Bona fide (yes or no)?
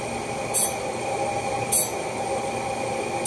yes